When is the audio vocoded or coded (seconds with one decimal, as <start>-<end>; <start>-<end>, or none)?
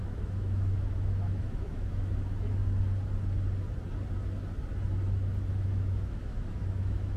0.0-2.6; 5.5-7.2